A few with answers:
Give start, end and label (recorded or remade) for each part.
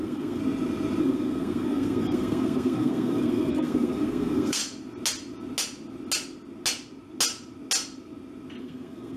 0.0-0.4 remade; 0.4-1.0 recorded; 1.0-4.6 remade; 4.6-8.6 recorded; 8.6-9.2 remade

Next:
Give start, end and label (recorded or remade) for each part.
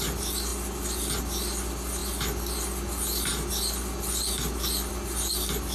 0.0-5.7 recorded